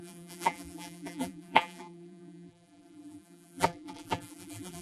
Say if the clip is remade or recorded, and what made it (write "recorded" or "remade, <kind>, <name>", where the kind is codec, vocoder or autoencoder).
remade, vocoder, BigVGAN v2